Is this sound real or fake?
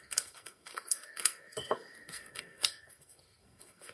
fake